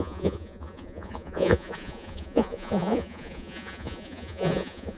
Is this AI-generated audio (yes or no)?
yes